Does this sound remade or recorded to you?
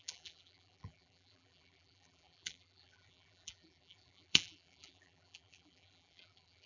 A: remade